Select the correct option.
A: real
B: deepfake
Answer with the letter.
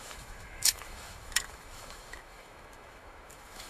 B